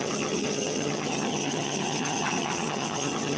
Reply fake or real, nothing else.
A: fake